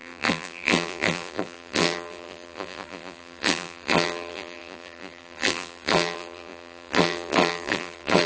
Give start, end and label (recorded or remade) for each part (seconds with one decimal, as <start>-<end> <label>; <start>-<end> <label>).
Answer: 0.0-8.3 remade